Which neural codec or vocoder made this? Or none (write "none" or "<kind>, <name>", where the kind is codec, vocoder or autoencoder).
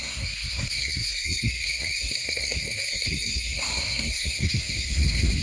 codec, SNAC